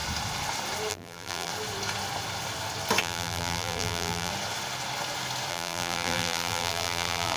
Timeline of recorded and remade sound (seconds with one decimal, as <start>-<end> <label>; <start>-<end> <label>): 0.0-0.9 recorded; 0.9-1.5 remade; 1.5-3.0 recorded; 3.0-4.3 remade; 4.3-5.5 recorded; 5.5-7.4 remade

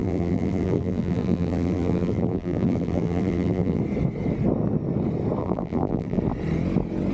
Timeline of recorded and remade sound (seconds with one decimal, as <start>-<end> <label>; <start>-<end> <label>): 0.0-3.8 remade; 3.8-5.4 recorded; 5.4-6.2 remade; 6.2-7.1 recorded

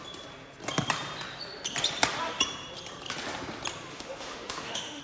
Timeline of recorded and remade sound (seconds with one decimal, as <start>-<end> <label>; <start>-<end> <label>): 0.0-3.9 recorded; 3.9-5.0 remade

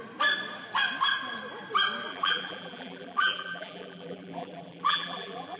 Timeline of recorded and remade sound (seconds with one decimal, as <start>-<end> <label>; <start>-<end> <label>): 0.0-2.1 recorded; 2.1-5.6 remade

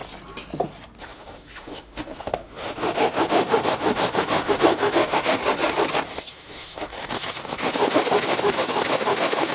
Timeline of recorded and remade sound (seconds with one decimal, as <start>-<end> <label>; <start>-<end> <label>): 0.0-1.0 recorded; 1.0-5.4 remade; 5.4-6.3 recorded; 6.3-9.5 remade